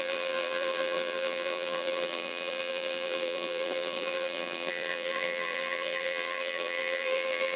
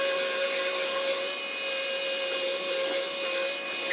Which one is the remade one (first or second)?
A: first